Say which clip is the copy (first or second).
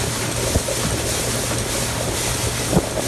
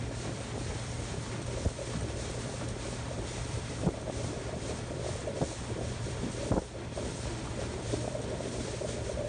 second